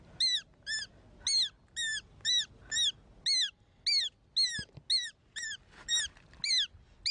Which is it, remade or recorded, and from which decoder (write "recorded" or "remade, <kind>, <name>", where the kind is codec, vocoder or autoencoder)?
recorded